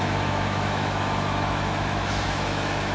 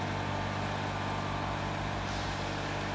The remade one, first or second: first